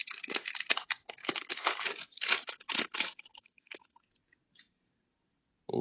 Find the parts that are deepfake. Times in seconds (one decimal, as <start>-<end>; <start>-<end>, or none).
1.2-1.7; 3.3-4.0